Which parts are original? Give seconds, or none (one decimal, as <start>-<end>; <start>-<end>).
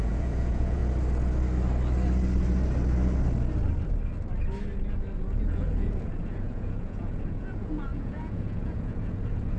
0.8-5.3